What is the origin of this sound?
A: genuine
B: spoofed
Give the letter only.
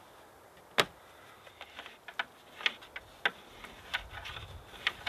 A